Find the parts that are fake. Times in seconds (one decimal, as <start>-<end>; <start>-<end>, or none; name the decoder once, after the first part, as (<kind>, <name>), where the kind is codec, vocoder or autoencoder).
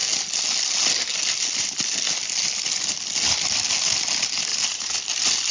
4.5-5.1 (vocoder, BigVGAN v2)